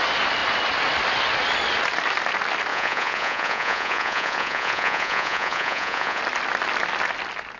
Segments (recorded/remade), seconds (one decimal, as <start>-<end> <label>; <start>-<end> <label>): 0.0-2.7 recorded; 2.7-6.2 remade; 6.2-7.6 recorded